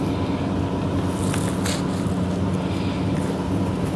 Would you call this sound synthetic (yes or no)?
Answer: no